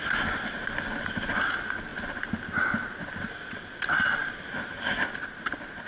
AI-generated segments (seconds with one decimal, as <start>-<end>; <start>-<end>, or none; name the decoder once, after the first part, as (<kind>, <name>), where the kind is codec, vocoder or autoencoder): none